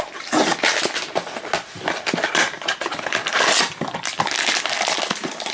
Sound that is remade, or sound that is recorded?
recorded